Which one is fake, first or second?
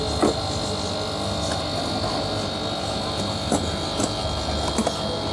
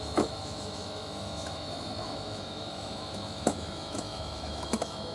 second